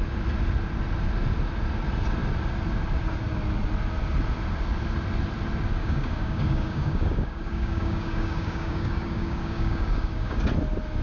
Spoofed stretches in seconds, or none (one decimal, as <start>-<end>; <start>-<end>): 5.8-10.4